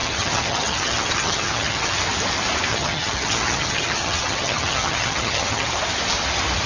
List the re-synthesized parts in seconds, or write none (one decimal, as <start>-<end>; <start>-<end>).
0.0-2.0; 2.7-5.7